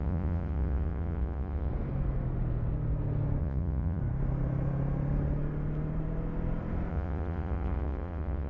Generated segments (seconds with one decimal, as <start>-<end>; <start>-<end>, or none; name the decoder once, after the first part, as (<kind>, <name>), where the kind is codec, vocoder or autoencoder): 0.0-1.7 (vocoder, Vocos); 3.4-4.0; 6.9-8.5